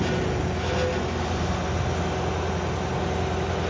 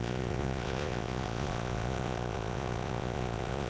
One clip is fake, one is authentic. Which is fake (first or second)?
second